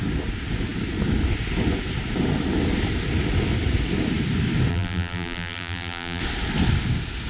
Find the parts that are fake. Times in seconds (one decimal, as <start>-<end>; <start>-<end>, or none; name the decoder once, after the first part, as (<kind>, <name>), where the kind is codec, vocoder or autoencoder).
4.7-6.2 (vocoder, BigVGAN v2)